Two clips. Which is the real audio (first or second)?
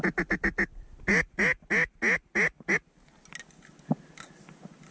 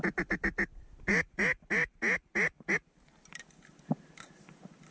first